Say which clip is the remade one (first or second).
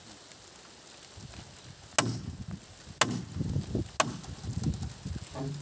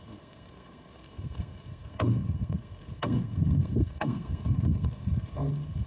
second